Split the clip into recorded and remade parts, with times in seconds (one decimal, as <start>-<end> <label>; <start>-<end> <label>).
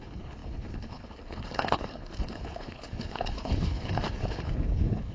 0.0-5.1 remade